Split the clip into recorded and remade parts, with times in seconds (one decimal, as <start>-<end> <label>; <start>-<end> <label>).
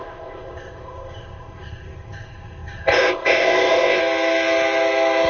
0.0-4.0 remade; 4.0-5.3 recorded